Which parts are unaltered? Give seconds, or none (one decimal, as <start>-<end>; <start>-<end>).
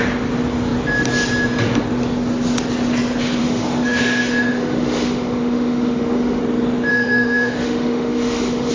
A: 0.0-3.4; 6.4-6.9